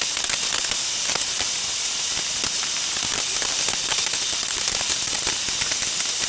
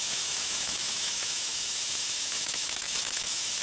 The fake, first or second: second